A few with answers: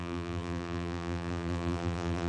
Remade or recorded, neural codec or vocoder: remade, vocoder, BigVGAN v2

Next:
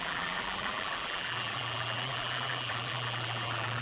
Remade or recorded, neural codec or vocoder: remade, vocoder, BigVGAN v2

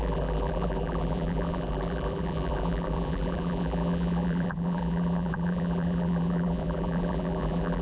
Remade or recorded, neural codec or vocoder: remade, vocoder, BigVGAN v2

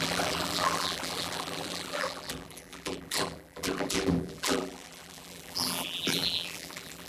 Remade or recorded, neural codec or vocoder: remade, vocoder, BigVGAN v2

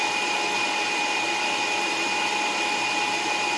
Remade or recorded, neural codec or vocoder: recorded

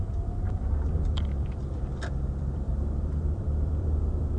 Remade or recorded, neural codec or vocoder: remade, vocoder, BigVGAN v2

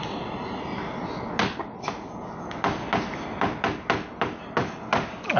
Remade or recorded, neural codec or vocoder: recorded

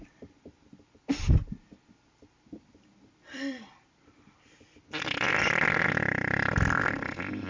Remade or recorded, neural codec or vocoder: remade, vocoder, BigVGAN v2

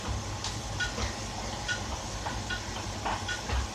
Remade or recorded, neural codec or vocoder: recorded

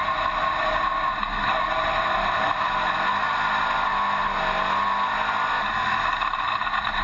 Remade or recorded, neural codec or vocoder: recorded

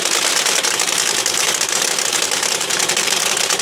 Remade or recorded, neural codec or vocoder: remade, vocoder, BigVGAN v2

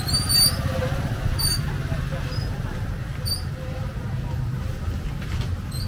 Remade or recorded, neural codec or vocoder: recorded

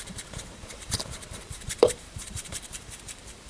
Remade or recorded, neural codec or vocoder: remade, vocoder, BigVGAN v2